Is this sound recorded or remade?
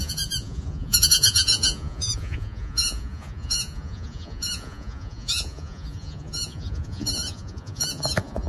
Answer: remade